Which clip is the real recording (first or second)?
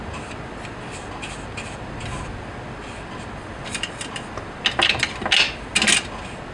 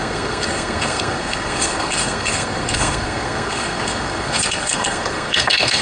first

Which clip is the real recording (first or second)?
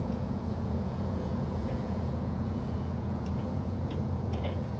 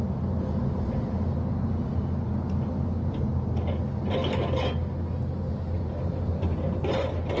second